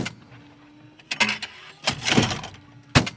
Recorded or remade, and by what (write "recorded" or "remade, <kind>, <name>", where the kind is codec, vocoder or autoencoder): recorded